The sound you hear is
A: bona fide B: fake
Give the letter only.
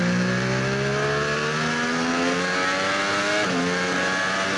A